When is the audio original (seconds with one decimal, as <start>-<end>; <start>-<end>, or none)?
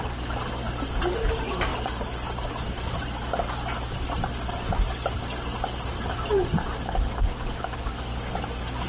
0.0-8.9